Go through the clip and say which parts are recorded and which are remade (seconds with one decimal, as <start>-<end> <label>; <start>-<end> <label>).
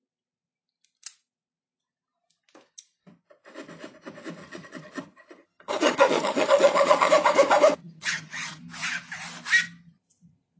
0.0-4.4 recorded; 4.4-7.1 remade; 7.1-7.8 recorded; 7.8-8.6 remade; 8.6-10.6 recorded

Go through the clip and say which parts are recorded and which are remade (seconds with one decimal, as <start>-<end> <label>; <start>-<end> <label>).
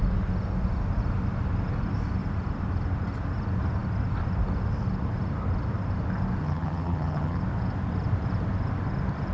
0.0-6.4 recorded; 6.4-7.4 remade; 7.4-9.3 recorded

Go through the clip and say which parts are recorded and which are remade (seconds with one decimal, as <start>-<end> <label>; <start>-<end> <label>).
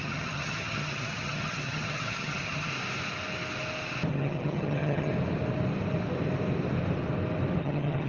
0.0-2.7 remade; 2.7-4.1 recorded; 4.1-5.1 remade; 5.1-7.6 recorded; 7.6-8.1 remade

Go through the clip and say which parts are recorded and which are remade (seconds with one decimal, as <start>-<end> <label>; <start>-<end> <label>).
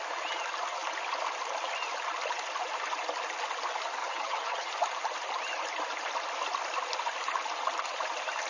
0.0-4.0 recorded; 4.0-4.7 remade; 4.7-8.5 recorded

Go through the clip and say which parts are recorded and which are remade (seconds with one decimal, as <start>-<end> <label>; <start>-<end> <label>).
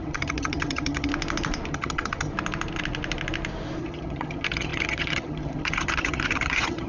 0.0-1.1 remade; 1.1-1.7 recorded; 1.7-2.3 remade; 2.3-3.8 recorded; 3.8-6.9 remade